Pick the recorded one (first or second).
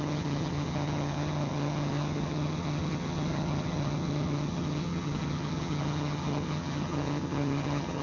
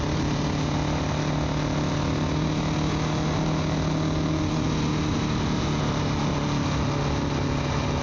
second